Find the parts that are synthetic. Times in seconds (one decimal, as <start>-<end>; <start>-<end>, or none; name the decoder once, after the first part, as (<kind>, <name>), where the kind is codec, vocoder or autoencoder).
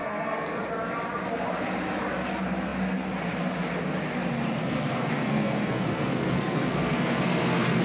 0.0-0.6 (codec, SNAC); 4.6-7.8